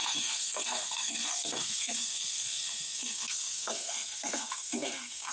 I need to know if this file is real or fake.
fake